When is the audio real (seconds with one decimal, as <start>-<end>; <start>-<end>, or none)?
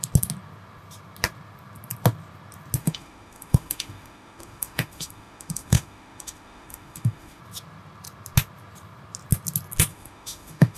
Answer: 0.0-2.8; 7.4-9.9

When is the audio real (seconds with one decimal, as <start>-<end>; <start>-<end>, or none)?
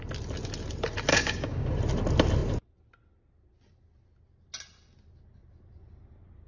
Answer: 0.0-1.1; 1.7-6.5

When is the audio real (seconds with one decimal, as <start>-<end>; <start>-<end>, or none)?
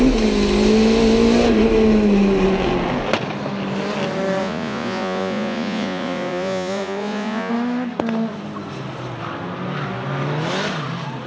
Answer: 0.0-4.4; 7.5-11.3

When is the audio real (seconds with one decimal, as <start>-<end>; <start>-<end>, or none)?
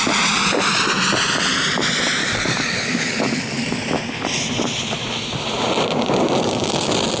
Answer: 0.0-2.2; 3.8-7.2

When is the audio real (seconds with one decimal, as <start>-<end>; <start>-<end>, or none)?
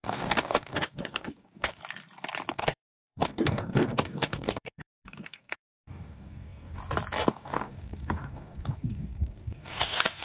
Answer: 1.8-2.5; 6.8-7.3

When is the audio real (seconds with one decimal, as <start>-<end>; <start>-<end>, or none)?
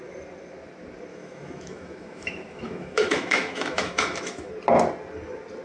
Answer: 0.0-1.1; 4.5-5.6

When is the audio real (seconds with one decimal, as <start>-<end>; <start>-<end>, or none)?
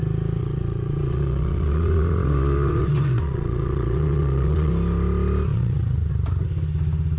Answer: 0.0-0.4; 4.7-5.5; 6.1-7.2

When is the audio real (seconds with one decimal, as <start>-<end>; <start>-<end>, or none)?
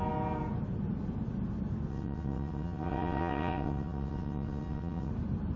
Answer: 0.0-1.9; 5.1-5.6